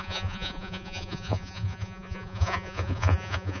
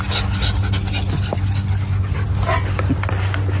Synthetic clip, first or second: first